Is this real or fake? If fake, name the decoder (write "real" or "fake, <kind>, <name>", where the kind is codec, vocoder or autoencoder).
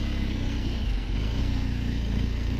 fake, codec, SNAC